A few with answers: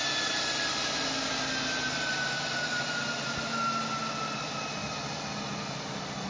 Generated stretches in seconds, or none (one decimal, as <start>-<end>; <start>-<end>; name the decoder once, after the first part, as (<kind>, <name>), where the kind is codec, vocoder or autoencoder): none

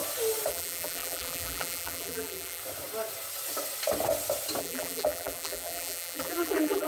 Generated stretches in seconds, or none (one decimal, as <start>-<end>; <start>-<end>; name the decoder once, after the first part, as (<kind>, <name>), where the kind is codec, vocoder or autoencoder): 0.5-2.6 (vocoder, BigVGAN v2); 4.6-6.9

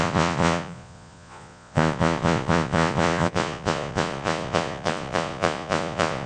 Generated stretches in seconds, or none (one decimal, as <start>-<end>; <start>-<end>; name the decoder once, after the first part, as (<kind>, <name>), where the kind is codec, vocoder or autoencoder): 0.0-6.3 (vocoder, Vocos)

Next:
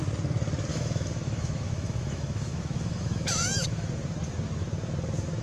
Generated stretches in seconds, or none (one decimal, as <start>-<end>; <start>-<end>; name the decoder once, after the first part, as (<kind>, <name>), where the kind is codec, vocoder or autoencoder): 0.7-3.9 (autoencoder, DAC-VAE)

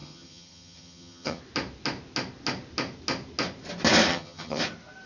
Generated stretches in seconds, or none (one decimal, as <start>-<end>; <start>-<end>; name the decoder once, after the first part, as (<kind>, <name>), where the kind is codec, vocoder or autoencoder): 0.0-1.4 (vocoder, HiFi-GAN); 4.1-4.6

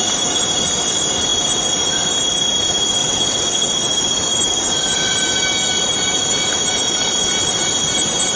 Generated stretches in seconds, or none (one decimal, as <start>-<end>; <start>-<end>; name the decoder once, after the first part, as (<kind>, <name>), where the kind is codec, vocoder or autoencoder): 3.0-3.8 (vocoder, WaveNeXt)

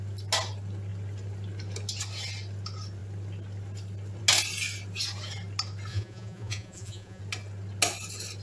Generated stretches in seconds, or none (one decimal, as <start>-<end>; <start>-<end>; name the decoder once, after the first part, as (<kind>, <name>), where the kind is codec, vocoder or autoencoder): 5.9-7.2 (vocoder, Vocos)

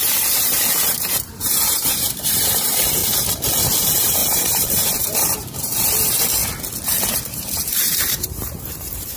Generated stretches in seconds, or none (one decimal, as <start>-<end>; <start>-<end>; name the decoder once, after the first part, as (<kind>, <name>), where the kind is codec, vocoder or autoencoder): 0.0-3.0 (vocoder, BigVGAN v2); 3.8-6.4; 7.1-9.2